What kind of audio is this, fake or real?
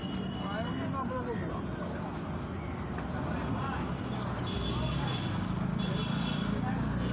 real